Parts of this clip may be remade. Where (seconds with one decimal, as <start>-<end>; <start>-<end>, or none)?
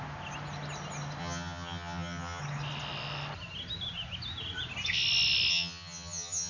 1.2-2.4; 5.5-6.5